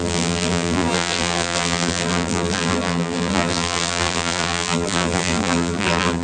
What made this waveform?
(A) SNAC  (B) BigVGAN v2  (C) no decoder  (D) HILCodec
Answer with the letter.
B